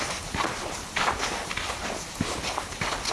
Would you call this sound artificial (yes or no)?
no